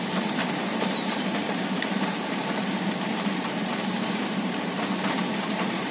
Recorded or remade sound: remade